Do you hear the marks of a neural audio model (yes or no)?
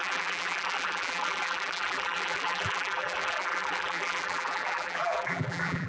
yes